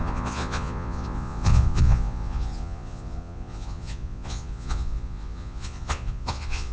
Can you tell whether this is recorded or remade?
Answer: remade